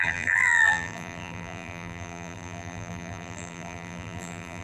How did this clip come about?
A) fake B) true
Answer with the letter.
A